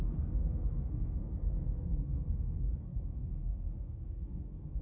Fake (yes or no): yes